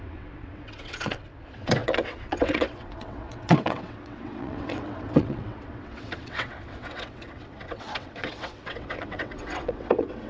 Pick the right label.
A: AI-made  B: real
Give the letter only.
A